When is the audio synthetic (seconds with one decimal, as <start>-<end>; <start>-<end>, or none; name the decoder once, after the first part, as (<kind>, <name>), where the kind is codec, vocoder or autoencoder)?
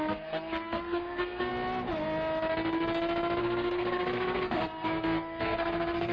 0.0-1.5 (codec, SNAC); 3.4-6.1